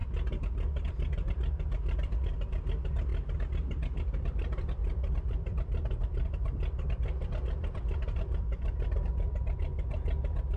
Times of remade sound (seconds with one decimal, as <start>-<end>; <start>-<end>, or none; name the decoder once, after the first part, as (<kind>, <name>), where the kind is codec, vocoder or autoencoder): 0.9-3.1 (vocoder, BigVGAN v2); 4.0-10.6